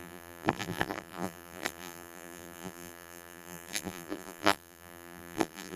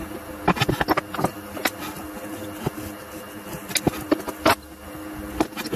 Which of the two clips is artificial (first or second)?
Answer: first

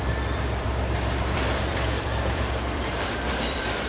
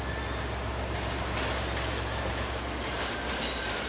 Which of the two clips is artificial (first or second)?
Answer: first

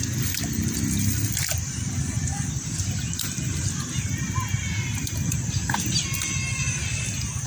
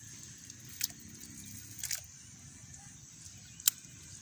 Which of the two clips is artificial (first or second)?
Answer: first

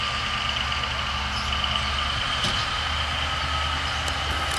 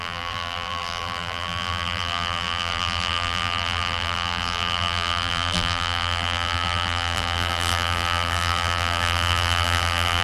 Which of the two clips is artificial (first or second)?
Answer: second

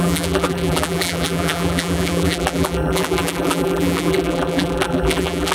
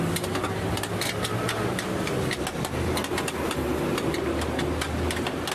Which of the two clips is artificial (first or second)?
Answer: first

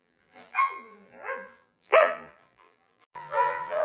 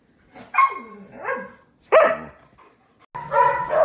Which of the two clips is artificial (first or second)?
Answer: first